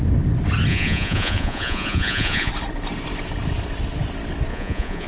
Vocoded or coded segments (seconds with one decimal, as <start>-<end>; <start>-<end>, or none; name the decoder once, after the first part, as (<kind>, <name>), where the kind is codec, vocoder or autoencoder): 0.7-2.5 (vocoder, Vocos); 4.5-5.1